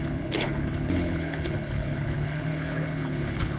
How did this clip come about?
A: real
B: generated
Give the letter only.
B